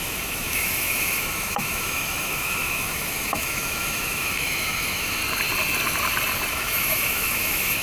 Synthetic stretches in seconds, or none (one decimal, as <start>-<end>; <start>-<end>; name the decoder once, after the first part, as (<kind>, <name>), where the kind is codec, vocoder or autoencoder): 0.0-5.2 (autoencoder, DAC-VAE); 6.5-7.8